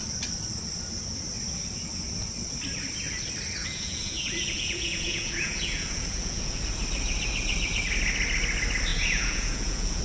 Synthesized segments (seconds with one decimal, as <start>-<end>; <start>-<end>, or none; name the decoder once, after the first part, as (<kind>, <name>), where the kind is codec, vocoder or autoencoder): 3.6-6.6 (vocoder, Vocos); 8.9-10.0